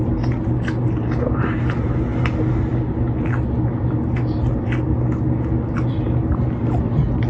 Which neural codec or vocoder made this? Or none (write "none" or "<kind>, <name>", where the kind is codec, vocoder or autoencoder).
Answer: none